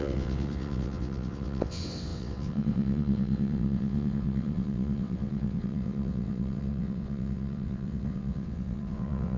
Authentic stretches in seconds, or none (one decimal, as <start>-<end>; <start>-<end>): none